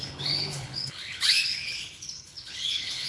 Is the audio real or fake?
fake